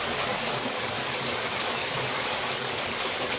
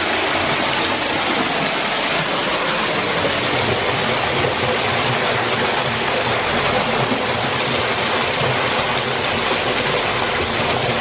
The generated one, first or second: first